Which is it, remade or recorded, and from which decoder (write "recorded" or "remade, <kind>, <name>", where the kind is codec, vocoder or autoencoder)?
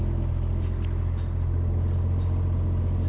recorded